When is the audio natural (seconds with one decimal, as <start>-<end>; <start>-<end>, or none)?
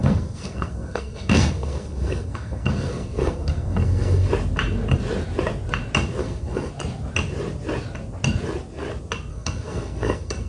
4.3-6.2; 6.7-9.3